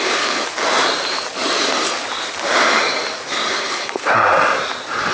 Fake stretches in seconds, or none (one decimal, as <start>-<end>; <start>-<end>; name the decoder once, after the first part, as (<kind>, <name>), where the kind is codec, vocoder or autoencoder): 0.0-0.4 (codec, HILCodec); 3.5-4.1

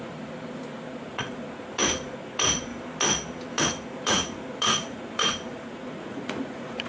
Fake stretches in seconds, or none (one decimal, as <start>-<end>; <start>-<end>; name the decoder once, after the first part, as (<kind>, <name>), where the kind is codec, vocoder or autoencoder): 0.0-2.7 (vocoder, Vocos); 3.6-6.9

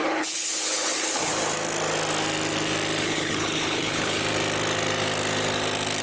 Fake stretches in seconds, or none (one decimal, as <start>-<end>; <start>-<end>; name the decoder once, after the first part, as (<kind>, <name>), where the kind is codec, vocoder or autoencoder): 0.0-1.3 (codec, HILCodec); 3.0-4.2

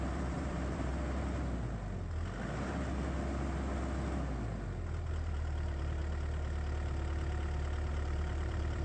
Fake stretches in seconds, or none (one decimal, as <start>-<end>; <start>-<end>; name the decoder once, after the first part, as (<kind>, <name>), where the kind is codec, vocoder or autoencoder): 0.0-0.9 (vocoder, BigVGAN v2); 5.1-6.0; 7.9-8.8